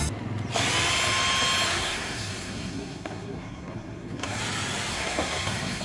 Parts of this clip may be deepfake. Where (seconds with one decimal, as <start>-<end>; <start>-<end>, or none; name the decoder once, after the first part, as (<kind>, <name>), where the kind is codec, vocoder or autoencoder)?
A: 1.7-4.4 (codec, SNAC); 4.9-5.8